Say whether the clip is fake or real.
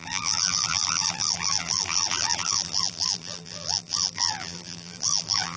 fake